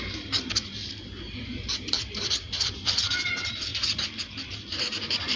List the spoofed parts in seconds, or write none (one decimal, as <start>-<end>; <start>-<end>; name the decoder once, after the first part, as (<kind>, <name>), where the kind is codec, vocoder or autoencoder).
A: 0.0-3.7 (vocoder, BigVGAN v2); 4.5-5.4